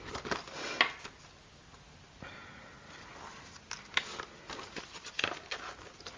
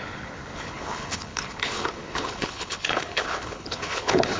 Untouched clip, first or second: first